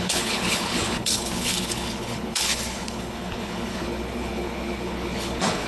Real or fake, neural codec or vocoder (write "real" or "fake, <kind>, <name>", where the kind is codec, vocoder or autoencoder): fake, codec, HILCodec